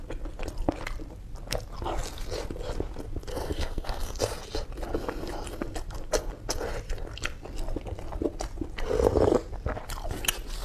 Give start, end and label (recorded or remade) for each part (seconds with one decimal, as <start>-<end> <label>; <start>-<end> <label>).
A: 0.0-3.3 recorded; 3.3-4.2 remade; 4.2-10.6 recorded